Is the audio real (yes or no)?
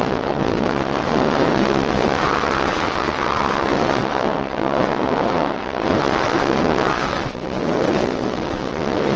no